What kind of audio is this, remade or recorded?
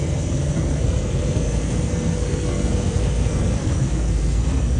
remade